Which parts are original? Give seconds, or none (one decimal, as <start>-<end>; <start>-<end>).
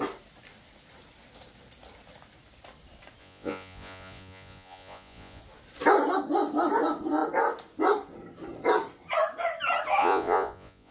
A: 0.0-3.2; 5.4-10.0